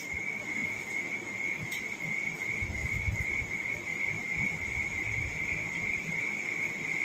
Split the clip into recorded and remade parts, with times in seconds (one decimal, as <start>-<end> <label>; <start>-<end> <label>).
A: 0.0-0.6 recorded; 0.6-2.4 remade; 2.4-2.8 recorded; 2.8-3.5 remade; 3.5-3.9 recorded; 3.9-6.1 remade; 6.1-7.0 recorded